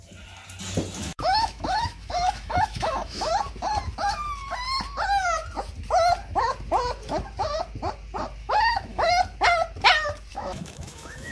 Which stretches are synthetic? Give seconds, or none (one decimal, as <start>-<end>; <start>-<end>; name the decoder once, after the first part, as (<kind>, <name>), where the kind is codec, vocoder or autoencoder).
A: 1.0-3.3 (autoencoder, DAC-VAE); 8.4-9.1; 10.3-11.3